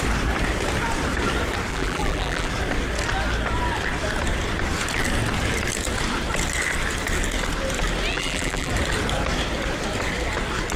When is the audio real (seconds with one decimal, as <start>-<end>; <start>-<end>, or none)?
0.0-1.7; 2.5-8.1; 8.7-10.8